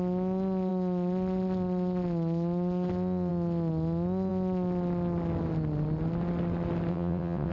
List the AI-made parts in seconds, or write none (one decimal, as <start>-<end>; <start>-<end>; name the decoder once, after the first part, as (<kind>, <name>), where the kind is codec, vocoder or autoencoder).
6.9-7.5 (vocoder, WaveNeXt)